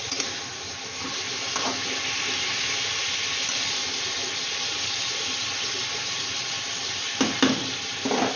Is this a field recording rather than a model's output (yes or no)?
yes